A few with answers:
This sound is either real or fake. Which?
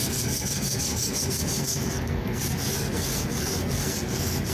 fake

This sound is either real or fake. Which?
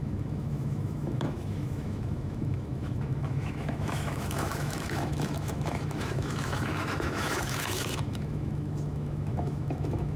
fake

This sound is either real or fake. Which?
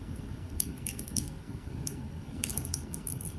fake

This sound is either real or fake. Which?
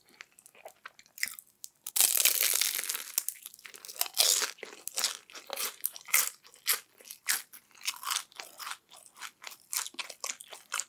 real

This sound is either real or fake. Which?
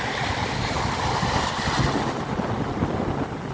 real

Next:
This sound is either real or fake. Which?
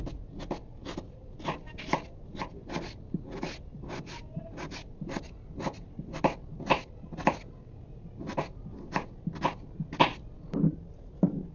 real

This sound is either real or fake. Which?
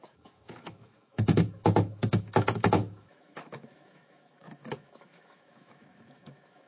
fake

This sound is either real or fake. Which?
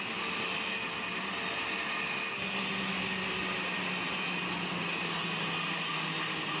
real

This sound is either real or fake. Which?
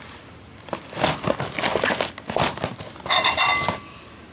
real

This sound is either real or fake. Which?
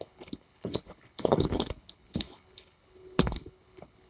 fake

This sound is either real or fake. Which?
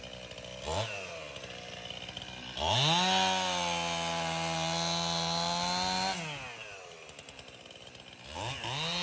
real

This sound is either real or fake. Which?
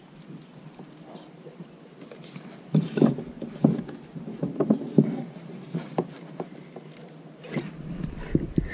real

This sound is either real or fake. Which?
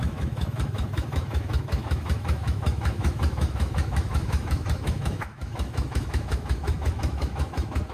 fake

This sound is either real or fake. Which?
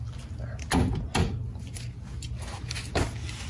real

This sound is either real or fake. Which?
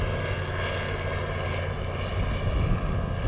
real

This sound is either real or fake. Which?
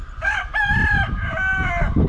real